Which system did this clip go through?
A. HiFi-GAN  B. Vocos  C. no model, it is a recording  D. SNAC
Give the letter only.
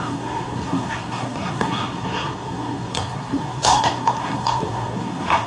D